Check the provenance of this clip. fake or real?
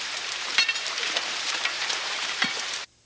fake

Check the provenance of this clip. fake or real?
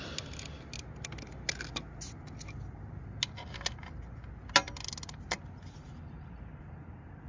real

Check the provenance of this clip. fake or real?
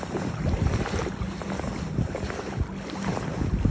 real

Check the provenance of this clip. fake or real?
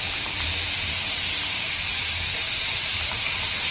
fake